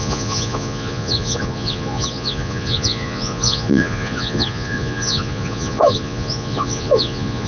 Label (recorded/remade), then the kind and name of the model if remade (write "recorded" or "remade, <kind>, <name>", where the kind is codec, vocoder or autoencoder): remade, vocoder, Vocos